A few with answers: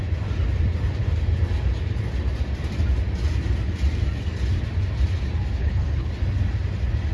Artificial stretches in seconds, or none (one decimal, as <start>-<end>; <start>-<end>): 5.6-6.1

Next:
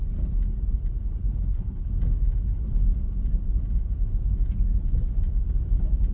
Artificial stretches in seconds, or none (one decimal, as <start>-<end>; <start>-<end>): 1.2-1.9

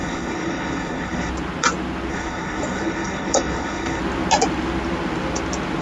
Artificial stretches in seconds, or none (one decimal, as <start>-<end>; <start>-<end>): 0.0-1.3; 2.1-4.0

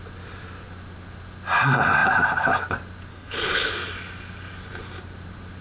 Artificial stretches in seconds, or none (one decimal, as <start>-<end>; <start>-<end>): 3.1-3.7

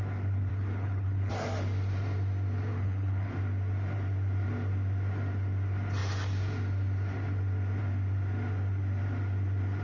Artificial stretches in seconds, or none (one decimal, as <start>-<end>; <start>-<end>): 0.5-1.3; 2.7-3.3

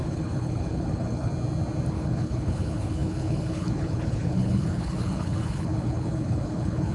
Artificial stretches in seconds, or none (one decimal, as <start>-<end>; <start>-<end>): 0.0-1.3; 1.9-6.9

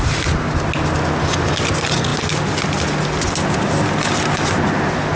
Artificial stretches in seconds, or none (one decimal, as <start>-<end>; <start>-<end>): none

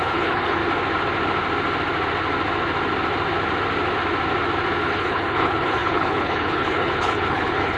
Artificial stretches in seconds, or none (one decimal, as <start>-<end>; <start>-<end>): 0.0-0.6; 4.8-7.8